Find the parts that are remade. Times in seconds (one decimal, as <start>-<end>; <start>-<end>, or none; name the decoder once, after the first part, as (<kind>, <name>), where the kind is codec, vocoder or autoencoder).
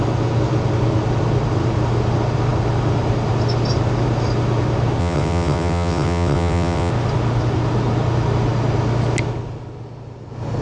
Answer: 5.0-6.9 (vocoder, WaveNeXt)